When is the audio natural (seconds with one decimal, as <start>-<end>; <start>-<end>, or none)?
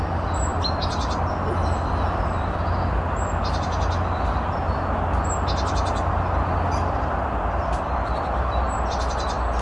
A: 0.0-9.6